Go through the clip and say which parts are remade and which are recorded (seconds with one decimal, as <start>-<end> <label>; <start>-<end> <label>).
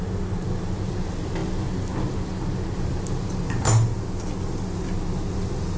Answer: 0.0-5.8 recorded